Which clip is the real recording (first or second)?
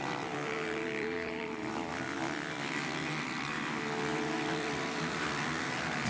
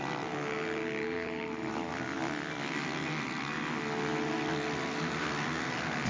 second